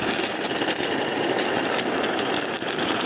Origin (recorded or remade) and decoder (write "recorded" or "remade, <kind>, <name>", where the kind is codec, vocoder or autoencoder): recorded